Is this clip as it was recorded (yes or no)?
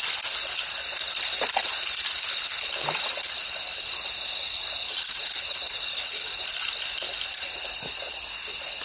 yes